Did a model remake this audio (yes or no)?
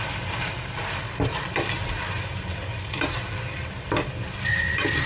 yes